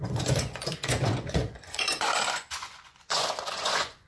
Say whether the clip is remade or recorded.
remade